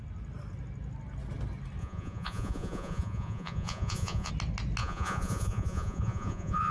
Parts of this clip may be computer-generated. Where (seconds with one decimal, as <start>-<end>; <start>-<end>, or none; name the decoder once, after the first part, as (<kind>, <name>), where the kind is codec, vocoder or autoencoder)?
1.8-4.3 (vocoder, Vocos); 4.8-6.7